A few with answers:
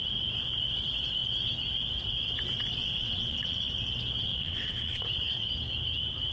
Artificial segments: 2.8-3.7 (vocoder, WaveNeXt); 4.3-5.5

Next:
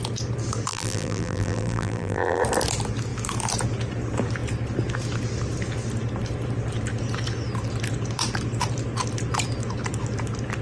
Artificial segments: 0.7-2.4 (vocoder, BigVGAN v2)